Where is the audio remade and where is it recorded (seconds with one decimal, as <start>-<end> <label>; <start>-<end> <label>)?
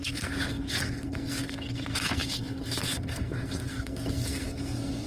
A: 0.0-5.1 remade